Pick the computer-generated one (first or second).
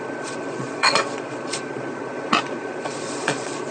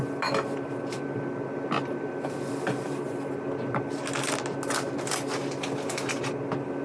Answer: first